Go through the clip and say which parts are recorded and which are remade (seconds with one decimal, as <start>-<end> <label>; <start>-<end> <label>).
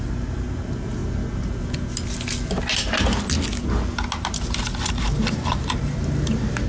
0.0-1.0 remade; 1.0-4.9 recorded; 4.9-6.7 remade